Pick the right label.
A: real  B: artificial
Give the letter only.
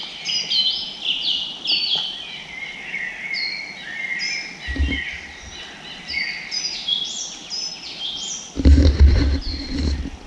A